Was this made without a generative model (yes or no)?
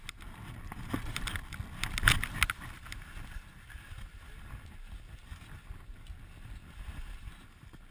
yes